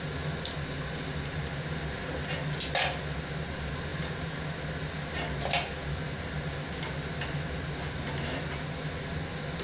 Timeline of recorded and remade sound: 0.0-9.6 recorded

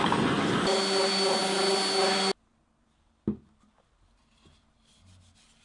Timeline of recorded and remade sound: 0.0-5.6 recorded

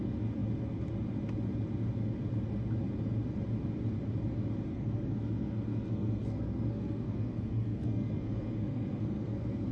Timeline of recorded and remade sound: 0.0-4.7 recorded; 4.7-9.7 remade

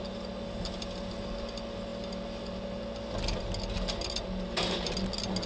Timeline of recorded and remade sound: 0.0-5.5 recorded

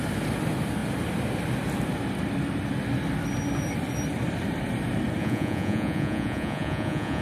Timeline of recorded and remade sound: 0.0-5.2 recorded; 5.2-7.2 remade

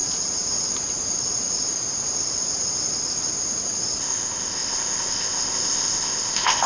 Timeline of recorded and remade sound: 0.0-4.0 recorded; 4.0-6.7 remade

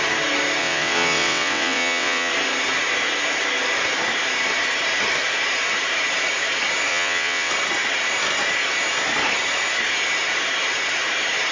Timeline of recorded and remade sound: 0.0-0.6 recorded; 0.6-2.3 remade; 2.3-6.9 recorded; 6.9-7.5 remade; 7.5-11.5 recorded